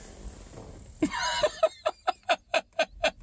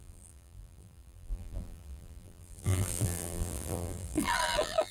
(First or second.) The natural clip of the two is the first